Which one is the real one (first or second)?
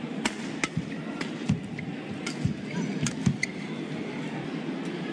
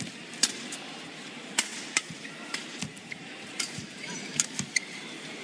first